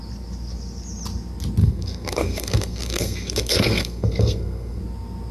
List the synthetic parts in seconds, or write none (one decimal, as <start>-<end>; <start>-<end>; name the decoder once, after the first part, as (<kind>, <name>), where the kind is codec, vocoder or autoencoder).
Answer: 1.6-4.8 (codec, SNAC)